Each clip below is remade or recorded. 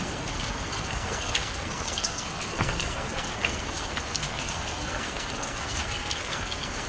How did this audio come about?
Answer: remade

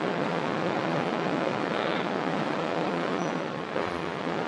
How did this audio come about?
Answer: remade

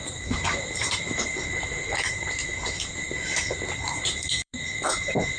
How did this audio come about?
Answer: remade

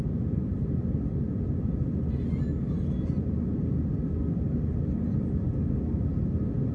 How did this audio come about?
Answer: recorded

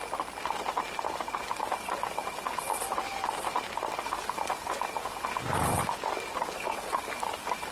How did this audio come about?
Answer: recorded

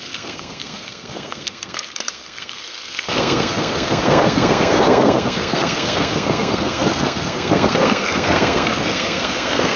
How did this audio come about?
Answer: remade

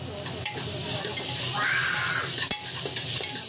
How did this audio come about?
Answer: recorded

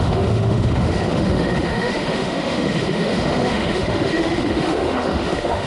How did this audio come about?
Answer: remade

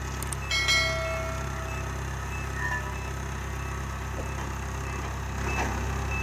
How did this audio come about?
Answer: recorded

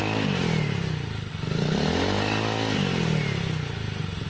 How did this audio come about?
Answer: recorded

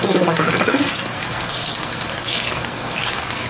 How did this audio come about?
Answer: remade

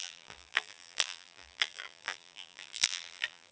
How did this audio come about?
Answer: remade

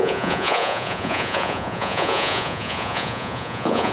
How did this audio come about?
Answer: remade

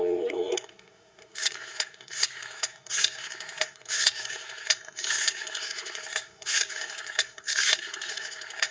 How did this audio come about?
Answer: remade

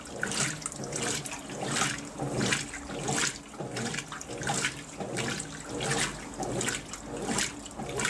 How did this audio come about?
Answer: recorded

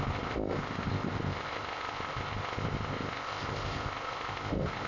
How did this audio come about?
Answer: remade